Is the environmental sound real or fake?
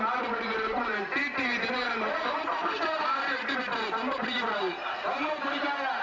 real